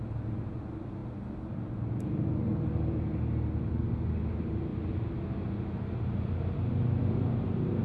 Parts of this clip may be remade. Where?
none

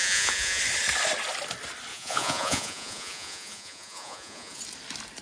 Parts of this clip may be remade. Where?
0.0-0.6 (vocoder, Vocos); 1.9-4.6

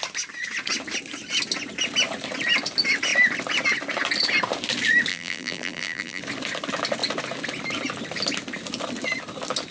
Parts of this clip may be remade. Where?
5.1-6.2 (vocoder, BigVGAN v2)

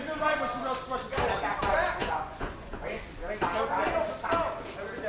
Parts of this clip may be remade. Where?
2.0-3.0 (vocoder, Vocos)

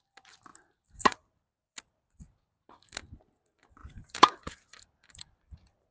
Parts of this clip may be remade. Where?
3.8-5.9 (vocoder, BigVGAN v2)

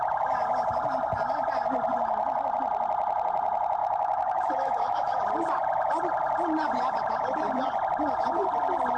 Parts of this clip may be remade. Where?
3.8-5.2 (autoencoder, DAC-VAE)

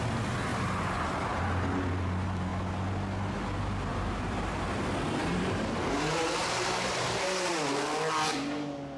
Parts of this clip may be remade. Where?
0.5-1.4 (vocoder, BigVGAN v2); 3.9-4.8; 5.2-7.5

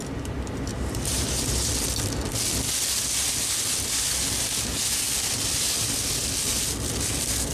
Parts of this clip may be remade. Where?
0.7-1.7 (vocoder, BigVGAN v2)